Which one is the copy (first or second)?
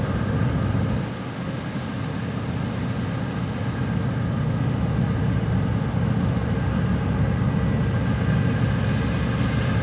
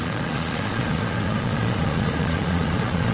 second